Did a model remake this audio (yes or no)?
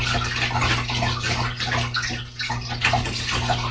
no